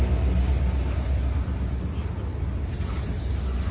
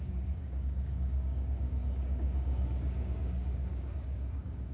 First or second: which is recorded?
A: first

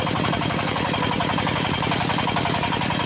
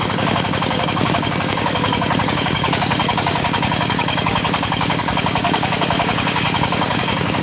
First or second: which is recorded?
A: first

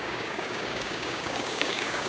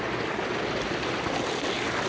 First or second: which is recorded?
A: second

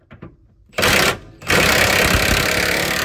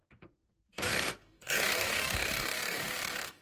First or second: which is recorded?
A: first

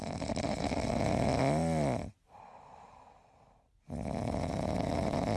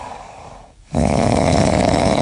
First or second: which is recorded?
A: first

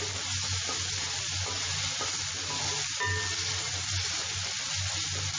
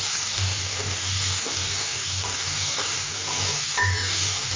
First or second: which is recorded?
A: first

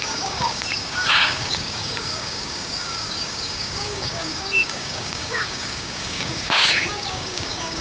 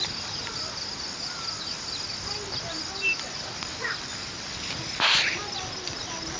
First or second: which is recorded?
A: second